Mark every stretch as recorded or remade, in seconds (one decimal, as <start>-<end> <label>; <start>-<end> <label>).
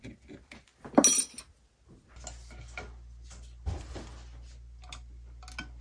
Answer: 0.0-5.8 recorded